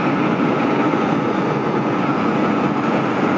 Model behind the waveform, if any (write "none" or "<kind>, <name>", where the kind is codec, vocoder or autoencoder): vocoder, Vocos